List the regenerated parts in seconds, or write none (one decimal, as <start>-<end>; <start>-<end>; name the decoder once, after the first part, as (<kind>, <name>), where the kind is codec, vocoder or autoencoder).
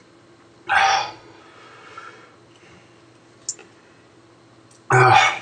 0.8-1.4 (codec, SNAC)